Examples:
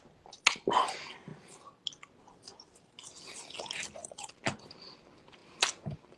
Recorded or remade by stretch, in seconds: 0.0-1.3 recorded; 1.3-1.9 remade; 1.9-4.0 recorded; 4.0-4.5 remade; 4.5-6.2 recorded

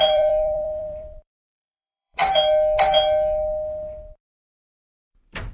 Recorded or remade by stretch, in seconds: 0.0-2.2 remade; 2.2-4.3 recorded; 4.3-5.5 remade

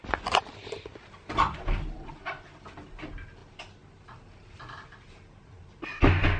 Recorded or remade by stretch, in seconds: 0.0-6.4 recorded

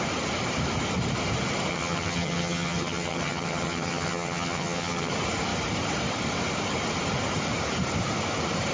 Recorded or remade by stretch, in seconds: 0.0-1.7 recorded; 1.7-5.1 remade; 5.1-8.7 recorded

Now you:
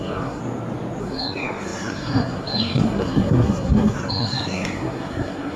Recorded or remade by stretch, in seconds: 0.0-0.4 remade; 0.4-1.0 recorded; 1.0-5.6 remade

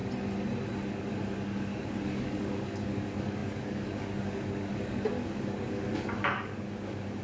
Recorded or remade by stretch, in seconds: 0.0-0.9 recorded; 0.9-7.2 remade

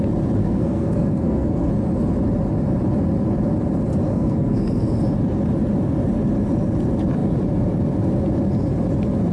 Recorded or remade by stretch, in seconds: 0.0-0.4 recorded; 0.4-1.7 remade; 1.7-4.1 recorded; 4.1-4.9 remade; 4.9-9.3 recorded

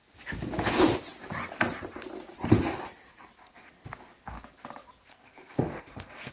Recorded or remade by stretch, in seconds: 0.0-5.1 recorded; 5.1-6.3 remade